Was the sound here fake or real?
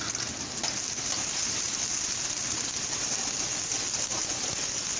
real